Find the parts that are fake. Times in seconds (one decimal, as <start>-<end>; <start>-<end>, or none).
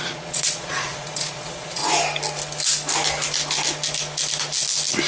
0.0-1.8